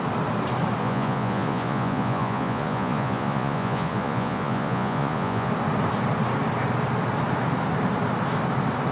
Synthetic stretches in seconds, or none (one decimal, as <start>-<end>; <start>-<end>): 0.8-5.5